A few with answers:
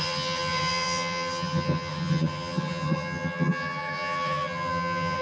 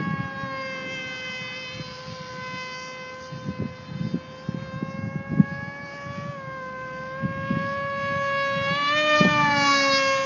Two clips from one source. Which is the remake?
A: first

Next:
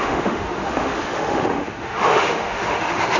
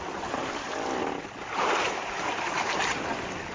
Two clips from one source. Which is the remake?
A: first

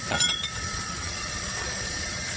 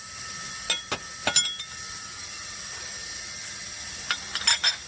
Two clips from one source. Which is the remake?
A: first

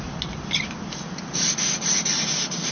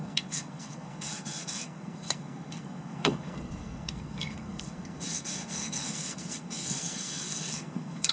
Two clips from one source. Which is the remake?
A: second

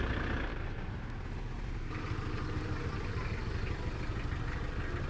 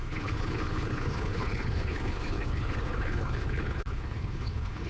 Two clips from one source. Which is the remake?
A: second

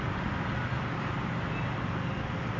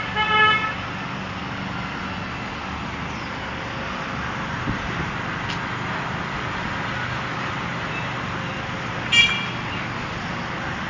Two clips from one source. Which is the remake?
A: first